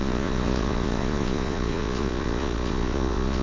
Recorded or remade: remade